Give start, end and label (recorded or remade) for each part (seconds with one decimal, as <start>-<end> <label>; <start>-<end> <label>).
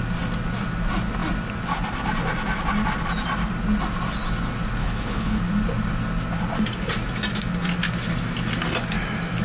0.0-4.8 recorded; 4.8-5.4 remade; 5.4-9.4 recorded